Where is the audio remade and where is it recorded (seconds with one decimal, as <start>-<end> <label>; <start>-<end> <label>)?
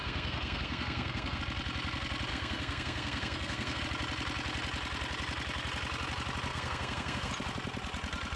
0.0-1.4 remade; 1.4-2.3 recorded; 2.3-3.8 remade; 3.8-6.5 recorded; 6.5-7.3 remade; 7.3-8.4 recorded